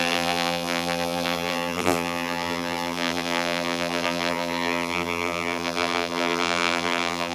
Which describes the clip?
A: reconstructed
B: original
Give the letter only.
A